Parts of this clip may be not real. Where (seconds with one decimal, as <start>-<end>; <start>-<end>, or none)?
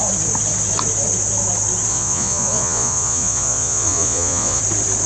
1.9-4.6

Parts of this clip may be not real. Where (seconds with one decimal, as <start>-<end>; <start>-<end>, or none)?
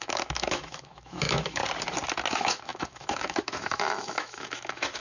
0.0-1.6; 2.3-5.0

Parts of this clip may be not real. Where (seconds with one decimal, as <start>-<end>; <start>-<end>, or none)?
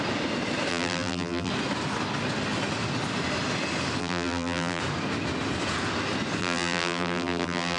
0.7-1.5; 4.0-4.8; 6.4-7.8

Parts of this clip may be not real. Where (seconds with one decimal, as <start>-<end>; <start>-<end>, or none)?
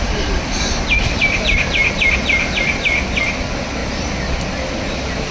none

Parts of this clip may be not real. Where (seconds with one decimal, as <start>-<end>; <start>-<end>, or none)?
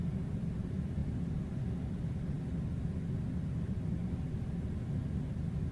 none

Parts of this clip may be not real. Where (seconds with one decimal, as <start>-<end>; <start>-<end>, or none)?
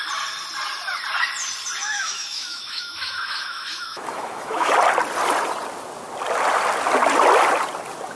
1.8-4.7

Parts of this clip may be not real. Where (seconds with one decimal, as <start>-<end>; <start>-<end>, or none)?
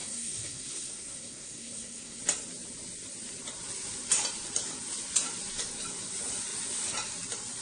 0.0-2.2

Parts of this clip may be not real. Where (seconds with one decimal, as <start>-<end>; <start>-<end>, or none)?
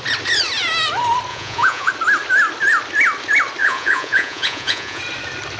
1.3-1.9; 3.6-5.0